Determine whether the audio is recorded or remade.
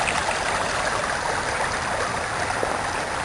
recorded